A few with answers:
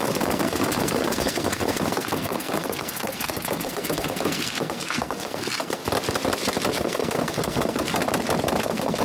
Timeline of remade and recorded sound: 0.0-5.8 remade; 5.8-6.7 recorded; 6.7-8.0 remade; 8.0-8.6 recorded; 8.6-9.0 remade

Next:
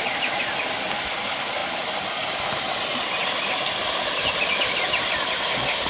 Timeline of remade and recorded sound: 0.0-5.9 recorded

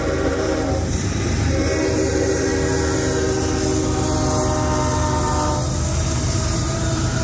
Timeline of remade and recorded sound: 0.0-2.5 remade; 2.5-6.0 recorded; 6.0-7.2 remade

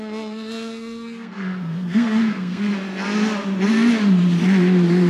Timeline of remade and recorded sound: 0.0-2.7 remade; 2.7-5.1 recorded

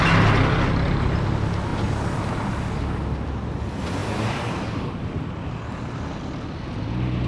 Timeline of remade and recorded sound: 0.0-7.3 recorded